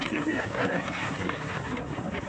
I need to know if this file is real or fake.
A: fake